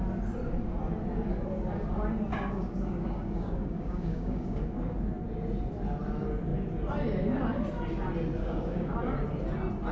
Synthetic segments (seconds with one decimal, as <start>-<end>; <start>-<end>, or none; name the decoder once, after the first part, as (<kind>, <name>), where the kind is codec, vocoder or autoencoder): 2.3-4.8 (codec, DAC); 8.4-9.0